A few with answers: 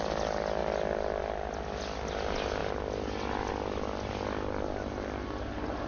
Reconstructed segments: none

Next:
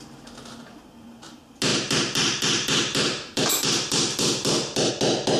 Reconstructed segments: 1.7-4.9 (vocoder, BigVGAN v2)

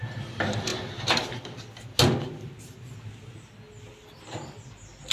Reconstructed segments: 0.0-0.7 (vocoder, BigVGAN v2); 3.8-5.1

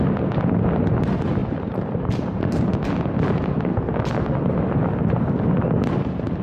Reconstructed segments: 1.4-2.6 (vocoder, BigVGAN v2)

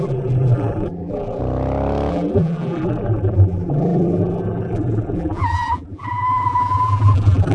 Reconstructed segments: 0.0-1.4 (vocoder, BigVGAN v2); 2.1-7.5

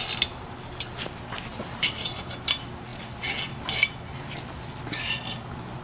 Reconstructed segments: 1.5-2.5 (vocoder, BigVGAN v2)

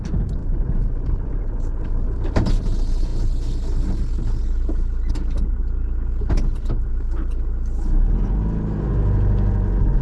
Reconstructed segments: 0.4-2.5 (vocoder, BigVGAN v2)